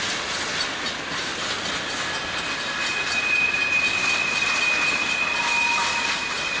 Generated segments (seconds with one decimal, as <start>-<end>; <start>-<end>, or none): none